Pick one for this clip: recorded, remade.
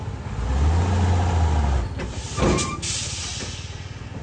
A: recorded